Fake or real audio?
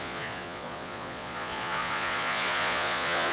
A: fake